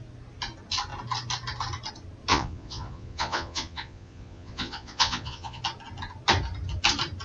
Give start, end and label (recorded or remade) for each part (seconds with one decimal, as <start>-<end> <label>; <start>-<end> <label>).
0.0-2.3 recorded; 2.3-5.6 remade; 5.6-7.2 recorded